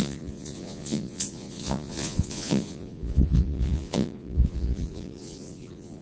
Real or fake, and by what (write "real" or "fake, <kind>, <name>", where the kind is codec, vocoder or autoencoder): fake, vocoder, Vocos